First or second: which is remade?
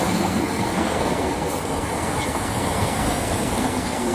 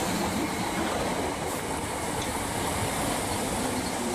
first